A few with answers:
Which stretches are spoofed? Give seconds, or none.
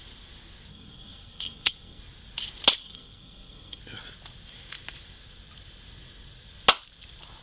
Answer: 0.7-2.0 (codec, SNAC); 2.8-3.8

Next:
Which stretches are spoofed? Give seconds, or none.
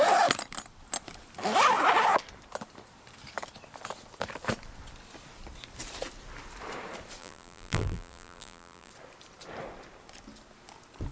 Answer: 7.2-8.9 (vocoder, BigVGAN v2)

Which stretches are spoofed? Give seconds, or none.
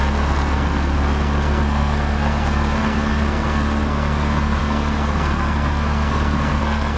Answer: 0.0-7.0 (codec, SNAC)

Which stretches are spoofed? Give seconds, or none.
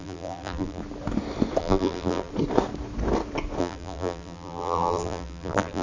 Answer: 0.0-0.8 (vocoder, BigVGAN v2); 1.6-2.3; 3.6-5.8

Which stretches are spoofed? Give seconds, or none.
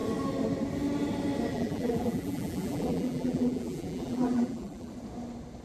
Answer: 1.5-4.9 (vocoder, BigVGAN v2)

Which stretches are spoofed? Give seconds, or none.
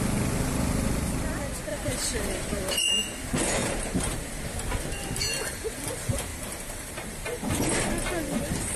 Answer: 1.7-2.9 (vocoder, BigVGAN v2); 3.6-4.4; 6.3-7.4